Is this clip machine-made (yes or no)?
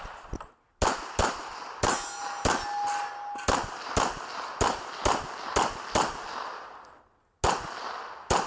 no